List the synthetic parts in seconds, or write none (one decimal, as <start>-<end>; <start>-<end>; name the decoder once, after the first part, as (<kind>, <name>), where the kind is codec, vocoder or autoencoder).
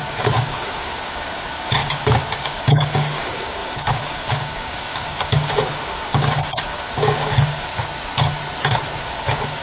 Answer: 0.0-7.7 (codec, DAC); 9.0-9.6